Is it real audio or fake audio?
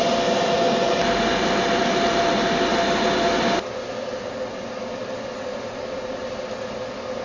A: real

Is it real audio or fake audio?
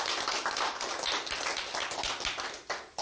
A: real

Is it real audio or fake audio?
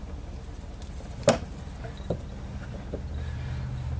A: real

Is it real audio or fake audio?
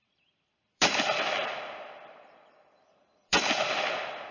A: fake